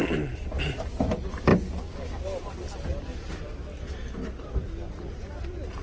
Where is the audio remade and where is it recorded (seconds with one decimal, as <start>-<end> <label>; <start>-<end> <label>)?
0.0-5.8 recorded